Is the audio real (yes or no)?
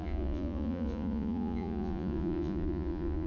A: no